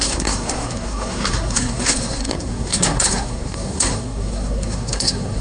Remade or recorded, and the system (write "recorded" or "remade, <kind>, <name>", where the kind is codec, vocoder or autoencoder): remade, codec, SNAC